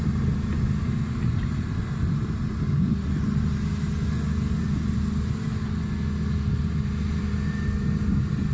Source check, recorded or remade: recorded